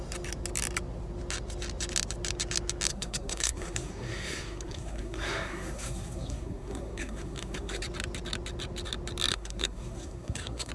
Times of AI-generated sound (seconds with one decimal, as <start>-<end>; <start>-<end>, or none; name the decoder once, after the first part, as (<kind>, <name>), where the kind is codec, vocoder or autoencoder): 2.9-7.8 (codec, SNAC); 9.3-10.7